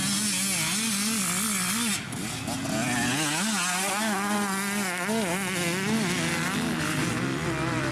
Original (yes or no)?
yes